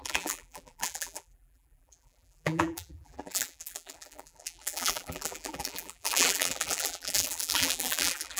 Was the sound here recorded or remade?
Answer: remade